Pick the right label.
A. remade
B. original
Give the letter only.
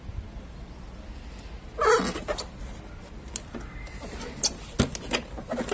B